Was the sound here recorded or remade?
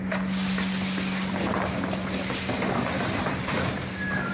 recorded